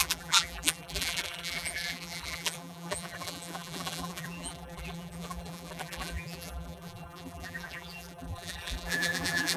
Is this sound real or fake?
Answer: fake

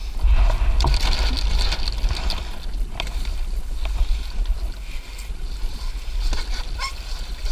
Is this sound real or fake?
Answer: real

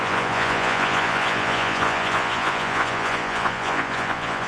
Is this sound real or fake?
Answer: fake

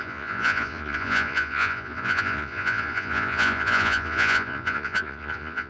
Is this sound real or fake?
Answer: fake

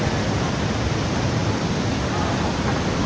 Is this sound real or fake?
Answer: real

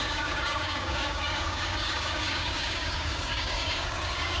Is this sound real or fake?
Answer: fake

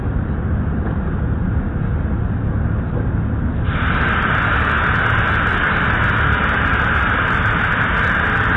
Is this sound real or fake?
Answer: real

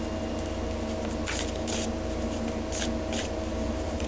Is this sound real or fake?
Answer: real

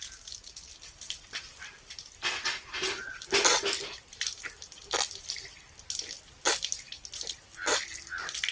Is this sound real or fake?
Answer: real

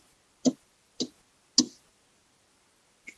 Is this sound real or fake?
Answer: real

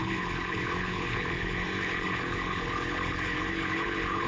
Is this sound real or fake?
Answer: fake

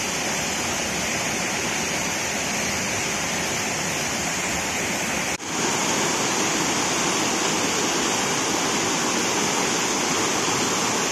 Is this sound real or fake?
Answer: real